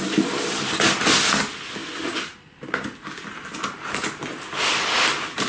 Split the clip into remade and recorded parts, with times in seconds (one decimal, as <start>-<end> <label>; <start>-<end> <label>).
0.0-5.5 recorded